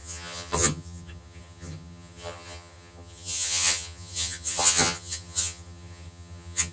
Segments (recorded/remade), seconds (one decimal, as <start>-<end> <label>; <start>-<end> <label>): 0.0-6.7 remade